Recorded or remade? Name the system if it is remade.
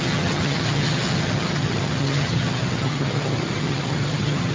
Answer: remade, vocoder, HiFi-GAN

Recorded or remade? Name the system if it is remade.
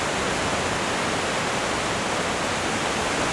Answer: recorded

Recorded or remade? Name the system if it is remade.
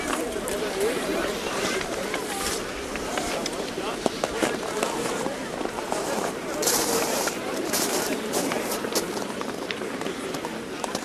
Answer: remade, vocoder, BigVGAN v2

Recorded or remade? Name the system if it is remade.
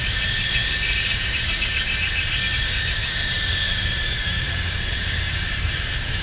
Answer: remade, codec, DAC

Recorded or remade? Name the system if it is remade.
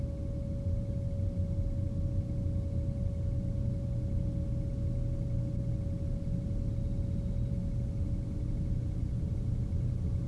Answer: recorded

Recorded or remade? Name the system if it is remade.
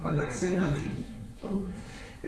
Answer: remade, codec, SNAC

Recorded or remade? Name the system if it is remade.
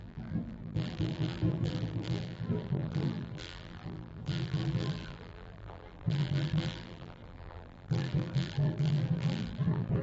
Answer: remade, vocoder, BigVGAN v2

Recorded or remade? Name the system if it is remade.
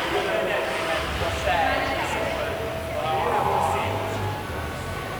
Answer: recorded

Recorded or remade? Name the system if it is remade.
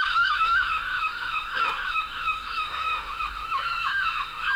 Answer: remade, autoencoder, DAC-VAE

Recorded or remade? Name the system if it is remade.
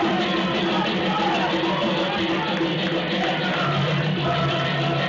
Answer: recorded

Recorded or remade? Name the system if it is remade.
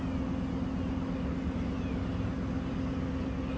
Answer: recorded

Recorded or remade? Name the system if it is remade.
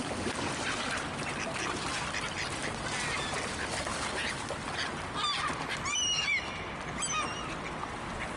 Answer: recorded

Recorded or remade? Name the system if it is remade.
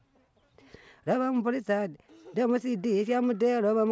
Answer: recorded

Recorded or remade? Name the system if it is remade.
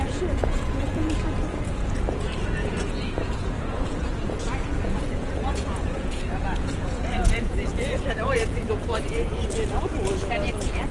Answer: remade, vocoder, Vocos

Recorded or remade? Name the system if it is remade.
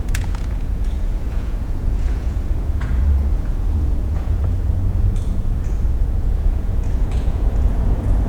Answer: remade, vocoder, Vocos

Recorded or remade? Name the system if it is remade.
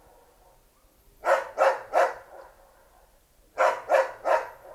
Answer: recorded